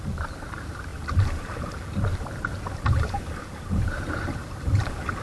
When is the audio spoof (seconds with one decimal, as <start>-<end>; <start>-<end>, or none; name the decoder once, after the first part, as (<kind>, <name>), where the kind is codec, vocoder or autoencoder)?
0.0-5.2 (vocoder, BigVGAN v2)